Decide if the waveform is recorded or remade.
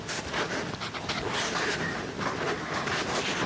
recorded